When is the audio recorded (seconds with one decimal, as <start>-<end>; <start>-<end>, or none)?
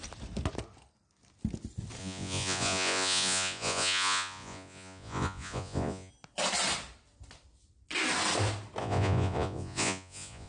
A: 0.0-2.0; 6.1-8.8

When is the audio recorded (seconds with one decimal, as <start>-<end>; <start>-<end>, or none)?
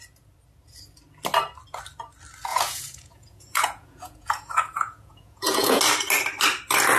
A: 0.0-2.5; 5.8-7.0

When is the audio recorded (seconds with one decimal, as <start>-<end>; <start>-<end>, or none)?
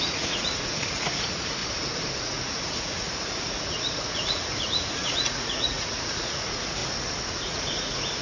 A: 1.6-2.2; 6.8-7.3